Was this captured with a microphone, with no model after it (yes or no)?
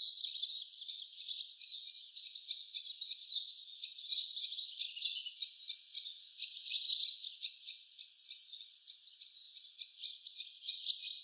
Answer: yes